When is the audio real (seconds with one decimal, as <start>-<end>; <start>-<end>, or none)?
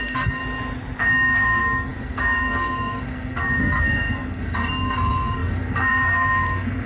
0.4-1.0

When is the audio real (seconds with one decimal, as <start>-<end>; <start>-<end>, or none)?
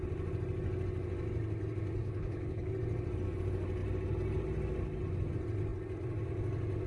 0.0-2.0; 2.7-6.9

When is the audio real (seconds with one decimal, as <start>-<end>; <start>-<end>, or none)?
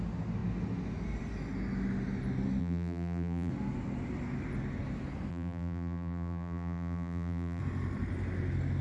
0.0-2.6; 3.5-5.3; 7.6-8.8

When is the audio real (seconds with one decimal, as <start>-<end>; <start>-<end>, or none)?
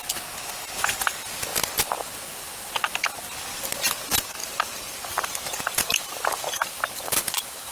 0.0-4.4